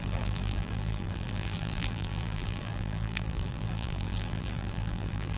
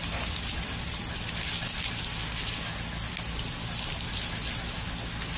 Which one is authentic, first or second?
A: second